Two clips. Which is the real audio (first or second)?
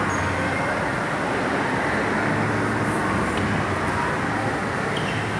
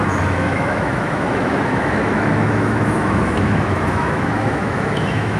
first